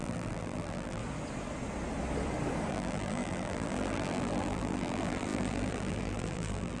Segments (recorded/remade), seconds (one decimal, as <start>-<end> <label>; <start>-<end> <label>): 0.0-1.0 remade; 1.0-2.7 recorded; 2.7-6.8 remade